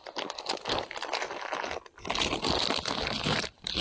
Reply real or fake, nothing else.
real